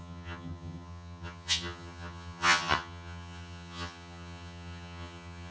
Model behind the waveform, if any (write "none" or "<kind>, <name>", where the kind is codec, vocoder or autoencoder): vocoder, HiFi-GAN